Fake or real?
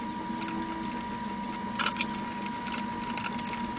real